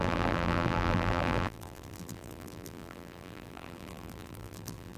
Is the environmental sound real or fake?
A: fake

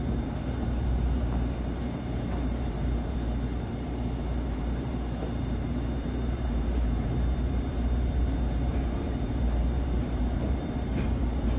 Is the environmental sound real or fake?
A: fake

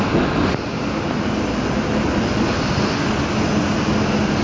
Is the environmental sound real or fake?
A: real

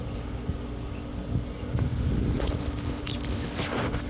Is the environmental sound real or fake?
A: real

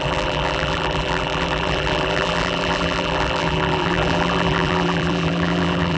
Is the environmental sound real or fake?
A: fake